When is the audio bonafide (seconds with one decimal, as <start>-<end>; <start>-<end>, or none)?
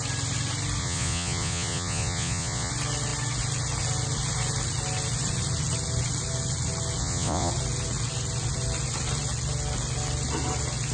0.0-0.8; 2.7-7.0; 7.5-10.9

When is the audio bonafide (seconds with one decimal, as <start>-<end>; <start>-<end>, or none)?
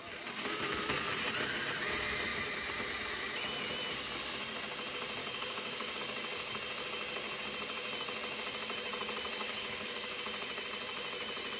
0.0-5.2; 6.0-9.4; 10.2-11.6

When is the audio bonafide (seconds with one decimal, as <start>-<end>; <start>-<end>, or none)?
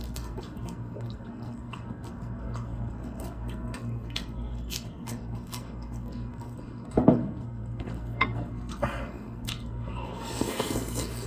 none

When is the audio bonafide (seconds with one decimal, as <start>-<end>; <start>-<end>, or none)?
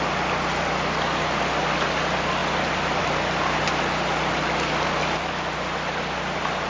0.0-6.7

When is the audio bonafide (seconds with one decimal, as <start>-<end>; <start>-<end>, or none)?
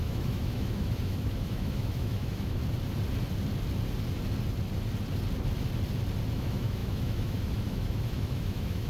2.6-6.3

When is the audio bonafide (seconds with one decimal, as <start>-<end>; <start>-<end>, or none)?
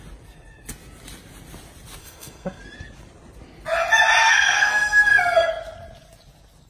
0.0-2.0; 2.6-4.2; 5.5-6.7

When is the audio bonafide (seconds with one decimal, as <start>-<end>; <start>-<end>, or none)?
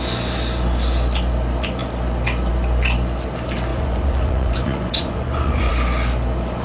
0.0-3.7; 5.7-6.6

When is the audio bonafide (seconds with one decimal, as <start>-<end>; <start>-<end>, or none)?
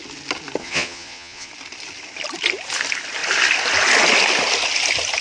0.0-0.6; 1.5-5.2